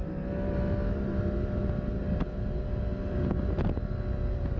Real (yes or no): yes